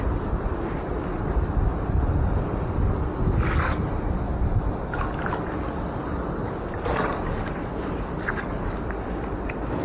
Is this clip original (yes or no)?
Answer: yes